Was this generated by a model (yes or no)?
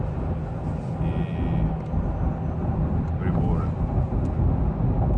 no